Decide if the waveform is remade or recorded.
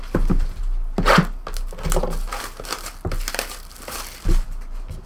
recorded